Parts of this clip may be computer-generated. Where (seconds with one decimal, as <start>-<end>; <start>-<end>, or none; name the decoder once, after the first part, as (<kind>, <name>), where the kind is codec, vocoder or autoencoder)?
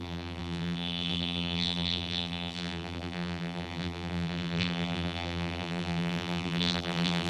0.0-7.3 (vocoder, BigVGAN v2)